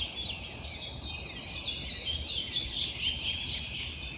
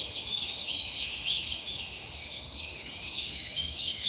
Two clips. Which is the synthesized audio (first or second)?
second